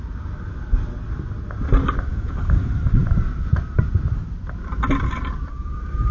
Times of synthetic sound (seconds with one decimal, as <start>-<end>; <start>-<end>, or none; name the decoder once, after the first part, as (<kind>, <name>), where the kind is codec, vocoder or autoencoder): 2.1-2.6 (codec, DAC); 5.5-6.1